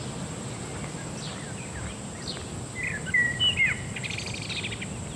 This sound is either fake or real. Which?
real